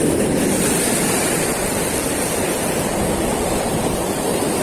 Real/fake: fake